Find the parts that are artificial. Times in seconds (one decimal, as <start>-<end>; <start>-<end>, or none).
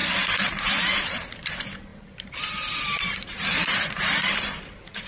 0.0-1.5; 1.9-5.1